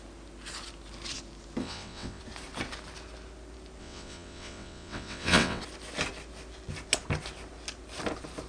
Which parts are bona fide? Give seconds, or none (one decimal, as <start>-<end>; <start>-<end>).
0.0-1.6; 2.2-3.8; 5.6-8.5